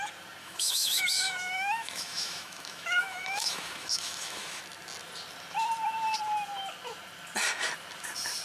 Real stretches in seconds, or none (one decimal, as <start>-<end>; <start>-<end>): 0.0-0.4; 4.6-8.4